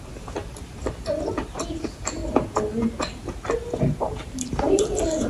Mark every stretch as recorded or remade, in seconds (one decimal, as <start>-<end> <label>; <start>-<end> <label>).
0.0-2.2 remade; 2.2-4.0 recorded; 4.0-5.3 remade